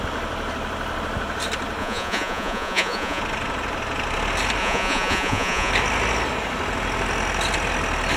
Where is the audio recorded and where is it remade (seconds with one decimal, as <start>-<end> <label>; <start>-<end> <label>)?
0.0-1.8 recorded; 1.8-3.2 remade; 3.2-4.6 recorded; 4.6-5.7 remade; 5.7-8.2 recorded